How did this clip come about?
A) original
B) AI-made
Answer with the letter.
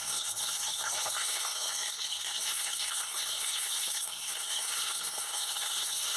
B